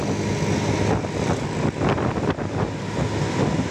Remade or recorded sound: recorded